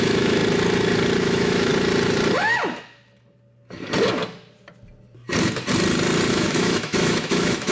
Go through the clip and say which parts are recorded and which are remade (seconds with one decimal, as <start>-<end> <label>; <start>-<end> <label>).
0.0-0.4 remade; 0.4-1.2 recorded; 1.2-1.7 remade; 1.7-6.3 recorded; 6.3-7.7 remade

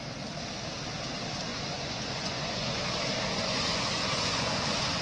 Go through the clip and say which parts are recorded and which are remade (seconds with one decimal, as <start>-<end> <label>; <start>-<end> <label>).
0.0-1.5 recorded; 1.5-2.7 remade; 2.7-3.3 recorded; 3.3-5.0 remade

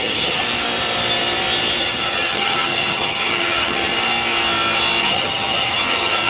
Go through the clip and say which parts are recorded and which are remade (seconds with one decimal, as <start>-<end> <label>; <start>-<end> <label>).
0.0-0.4 remade; 0.4-1.8 recorded; 1.8-3.9 remade; 3.9-5.0 recorded; 5.0-6.3 remade

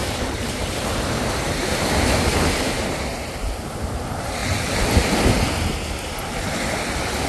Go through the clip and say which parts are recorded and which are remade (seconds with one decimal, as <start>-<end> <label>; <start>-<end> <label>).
0.0-4.4 remade; 4.4-7.3 recorded